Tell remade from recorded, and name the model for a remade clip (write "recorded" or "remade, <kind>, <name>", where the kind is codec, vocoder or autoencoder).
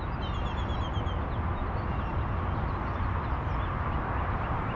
recorded